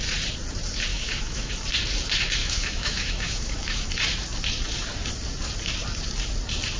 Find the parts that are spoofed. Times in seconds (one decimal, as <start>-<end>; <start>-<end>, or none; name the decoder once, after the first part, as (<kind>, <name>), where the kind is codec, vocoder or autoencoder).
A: 0.9-1.5 (autoencoder, DAC-VAE); 2.4-3.9